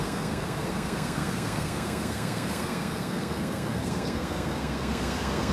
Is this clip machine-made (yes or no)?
yes